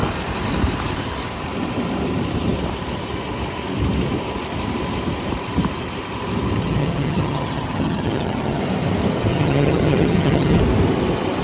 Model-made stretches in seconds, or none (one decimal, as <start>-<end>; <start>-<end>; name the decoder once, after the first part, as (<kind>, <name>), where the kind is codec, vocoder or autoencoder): 6.6-8.6 (vocoder, HiFi-GAN); 9.3-10.6